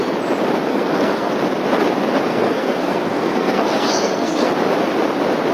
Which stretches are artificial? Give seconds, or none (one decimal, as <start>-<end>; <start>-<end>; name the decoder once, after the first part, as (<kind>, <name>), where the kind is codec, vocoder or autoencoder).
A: 0.7-1.3 (codec, SNAC); 2.3-4.5